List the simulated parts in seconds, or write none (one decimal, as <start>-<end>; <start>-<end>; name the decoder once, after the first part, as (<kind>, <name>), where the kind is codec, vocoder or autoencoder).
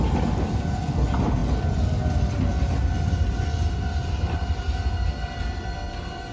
none